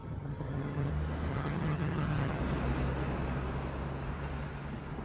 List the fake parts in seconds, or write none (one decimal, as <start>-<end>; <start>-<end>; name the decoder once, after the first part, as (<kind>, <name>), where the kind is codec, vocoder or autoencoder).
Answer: 0.0-0.9 (vocoder, HiFi-GAN); 1.3-2.4